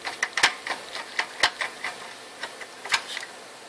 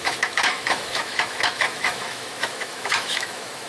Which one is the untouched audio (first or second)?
first